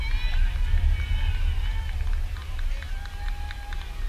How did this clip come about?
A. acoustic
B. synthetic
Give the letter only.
A